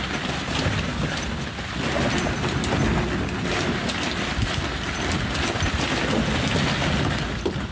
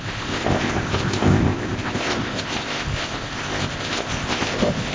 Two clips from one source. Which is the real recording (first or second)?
first